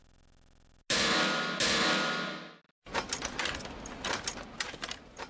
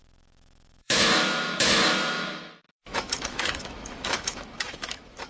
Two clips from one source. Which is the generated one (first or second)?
second